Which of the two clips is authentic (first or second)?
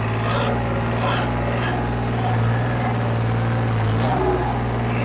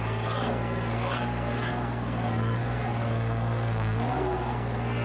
first